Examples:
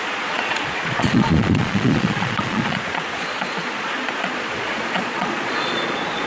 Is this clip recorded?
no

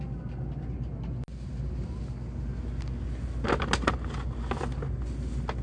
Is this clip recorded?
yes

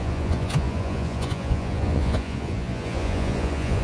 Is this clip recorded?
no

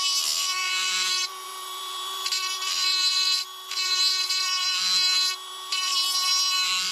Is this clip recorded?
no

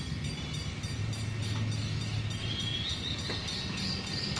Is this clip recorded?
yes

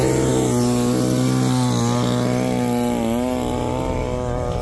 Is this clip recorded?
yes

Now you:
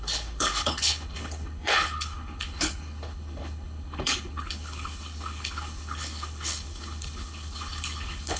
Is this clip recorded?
no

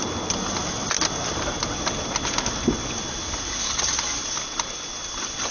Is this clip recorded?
yes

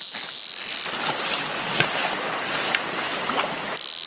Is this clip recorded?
yes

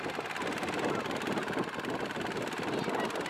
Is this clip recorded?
yes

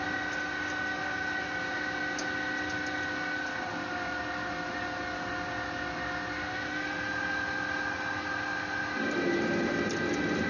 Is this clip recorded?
yes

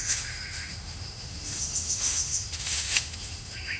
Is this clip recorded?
no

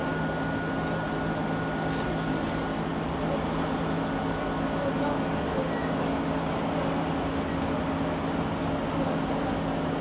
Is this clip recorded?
yes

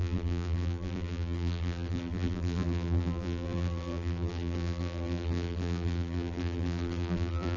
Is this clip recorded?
no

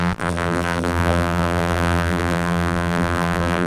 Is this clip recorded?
no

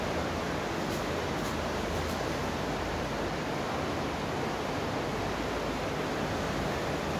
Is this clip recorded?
yes